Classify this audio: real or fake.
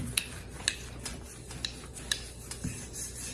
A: real